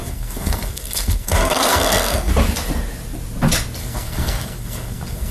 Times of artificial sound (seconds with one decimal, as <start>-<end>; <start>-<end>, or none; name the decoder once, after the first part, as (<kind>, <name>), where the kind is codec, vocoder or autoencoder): 0.0-2.3 (codec, SNAC); 3.8-5.3